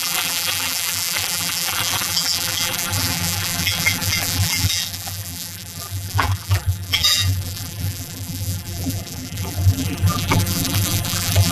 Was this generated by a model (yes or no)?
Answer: yes